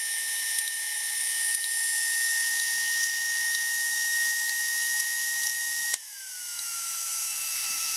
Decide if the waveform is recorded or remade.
remade